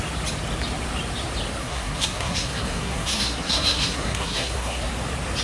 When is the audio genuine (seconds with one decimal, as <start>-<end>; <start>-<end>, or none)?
0.0-1.6; 4.8-5.4